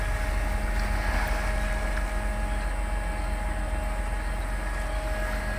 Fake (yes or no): no